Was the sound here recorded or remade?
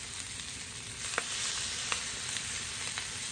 recorded